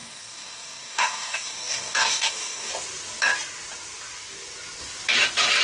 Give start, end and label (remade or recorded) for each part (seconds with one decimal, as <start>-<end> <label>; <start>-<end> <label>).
0.0-2.7 remade; 2.7-5.6 recorded